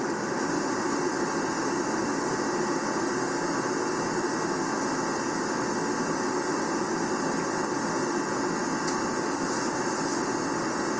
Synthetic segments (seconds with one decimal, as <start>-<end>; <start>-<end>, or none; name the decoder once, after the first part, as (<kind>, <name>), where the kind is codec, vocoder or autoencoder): none